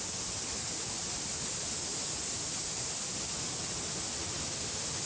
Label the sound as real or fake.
real